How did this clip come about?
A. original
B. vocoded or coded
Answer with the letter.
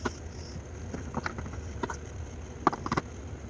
A